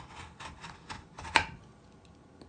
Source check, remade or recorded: recorded